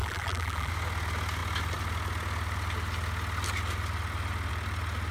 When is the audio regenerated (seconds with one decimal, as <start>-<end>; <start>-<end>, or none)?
0.0-0.7